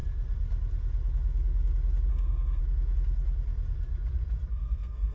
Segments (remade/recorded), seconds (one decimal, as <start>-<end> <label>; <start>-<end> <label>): 0.0-2.1 recorded; 2.1-2.6 remade; 2.6-4.5 recorded; 4.5-5.1 remade